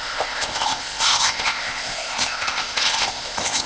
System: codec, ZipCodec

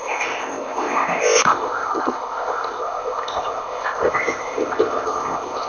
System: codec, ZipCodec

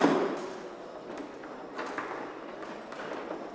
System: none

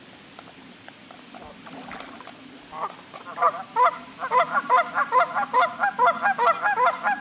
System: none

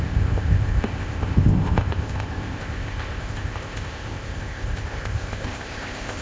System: codec, ZipCodec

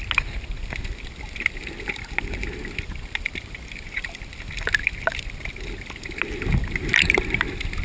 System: none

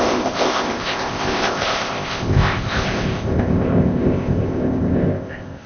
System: codec, ZipCodec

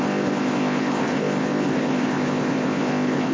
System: codec, ZipCodec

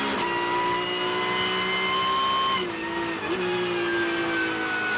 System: none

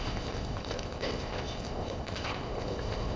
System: codec, ZipCodec